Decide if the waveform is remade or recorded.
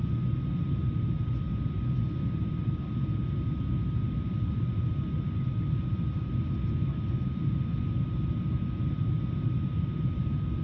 recorded